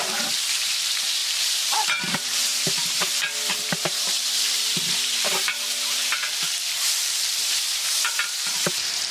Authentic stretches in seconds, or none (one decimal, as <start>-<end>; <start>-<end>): 6.2-7.4